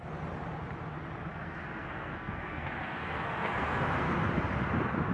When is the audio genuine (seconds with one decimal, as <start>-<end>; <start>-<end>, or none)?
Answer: 0.0-1.3; 4.1-5.1